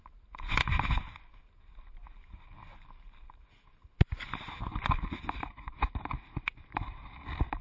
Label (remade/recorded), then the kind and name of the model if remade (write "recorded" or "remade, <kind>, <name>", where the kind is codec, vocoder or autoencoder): recorded